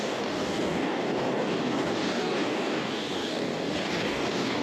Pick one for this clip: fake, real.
fake